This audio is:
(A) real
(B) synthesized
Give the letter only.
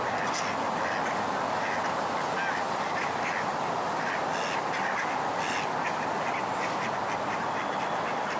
A